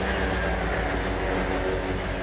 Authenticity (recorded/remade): recorded